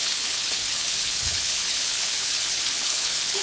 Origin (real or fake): fake